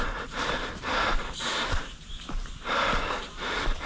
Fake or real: fake